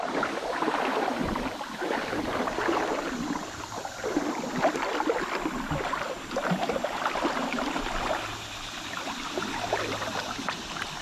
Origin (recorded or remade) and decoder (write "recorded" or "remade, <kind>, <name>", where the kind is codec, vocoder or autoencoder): recorded